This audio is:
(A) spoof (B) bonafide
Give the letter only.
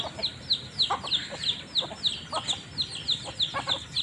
B